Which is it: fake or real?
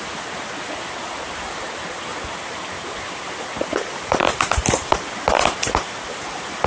real